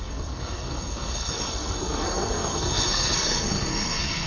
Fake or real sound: fake